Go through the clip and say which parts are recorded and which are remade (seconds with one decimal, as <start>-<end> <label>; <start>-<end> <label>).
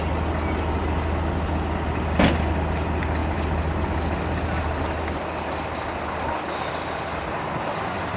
0.0-8.2 recorded